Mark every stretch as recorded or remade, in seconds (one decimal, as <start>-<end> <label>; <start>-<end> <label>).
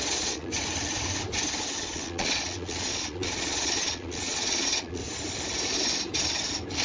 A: 0.0-0.5 remade; 0.5-1.8 recorded; 1.8-5.0 remade; 5.0-6.8 recorded